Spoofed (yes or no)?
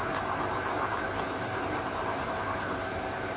no